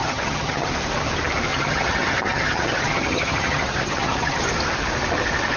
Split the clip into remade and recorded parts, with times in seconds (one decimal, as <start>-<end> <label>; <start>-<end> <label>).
0.0-0.7 remade; 0.7-1.5 recorded; 1.5-4.4 remade; 4.4-5.6 recorded